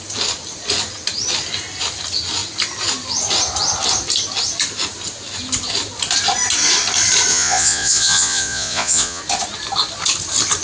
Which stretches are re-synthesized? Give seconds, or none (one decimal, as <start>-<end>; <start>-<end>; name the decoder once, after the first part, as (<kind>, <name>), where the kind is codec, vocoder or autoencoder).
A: 7.3-9.2 (vocoder, Vocos)